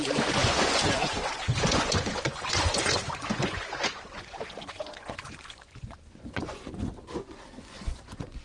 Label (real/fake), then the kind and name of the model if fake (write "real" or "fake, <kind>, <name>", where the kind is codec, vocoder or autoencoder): fake, vocoder, Vocos